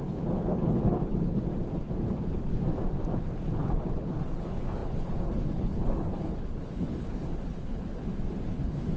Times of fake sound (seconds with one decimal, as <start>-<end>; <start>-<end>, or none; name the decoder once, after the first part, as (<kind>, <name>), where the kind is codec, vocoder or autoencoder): 0.0-1.5 (codec, HILCodec); 2.1-2.5; 3.2-8.0; 8.5-9.0